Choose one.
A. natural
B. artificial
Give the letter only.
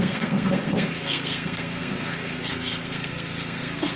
B